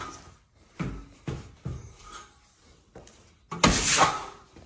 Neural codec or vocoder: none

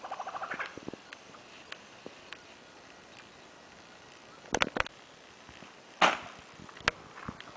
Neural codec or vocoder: none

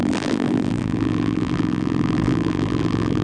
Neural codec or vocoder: vocoder, BigVGAN v2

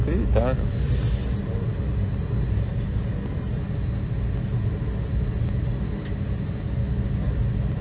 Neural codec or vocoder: none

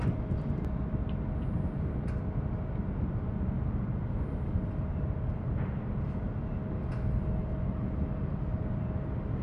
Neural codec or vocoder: none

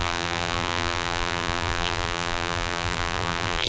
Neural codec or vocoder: vocoder, BigVGAN v2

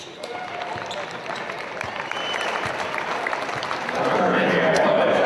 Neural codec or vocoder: vocoder, BigVGAN v2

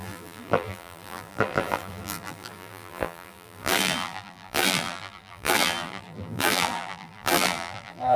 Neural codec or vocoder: vocoder, BigVGAN v2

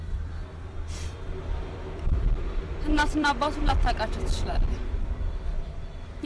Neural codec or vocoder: vocoder, BigVGAN v2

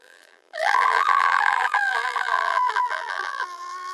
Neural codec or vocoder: vocoder, BigVGAN v2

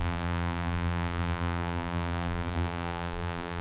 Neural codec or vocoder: vocoder, BigVGAN v2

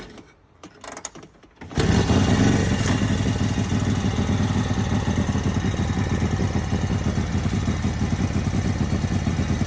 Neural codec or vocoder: none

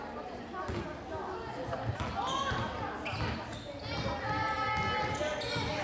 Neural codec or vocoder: none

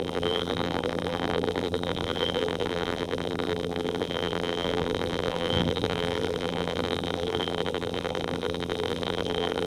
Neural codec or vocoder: vocoder, BigVGAN v2